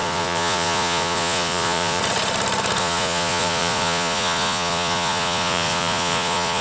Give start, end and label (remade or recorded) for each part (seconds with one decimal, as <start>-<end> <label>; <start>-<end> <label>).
0.0-2.0 remade; 2.0-2.8 recorded; 2.8-6.6 remade